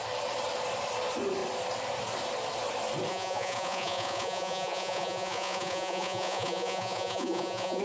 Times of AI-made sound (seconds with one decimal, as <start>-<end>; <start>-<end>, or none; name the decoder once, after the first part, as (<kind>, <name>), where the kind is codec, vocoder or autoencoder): 3.1-7.8 (vocoder, Vocos)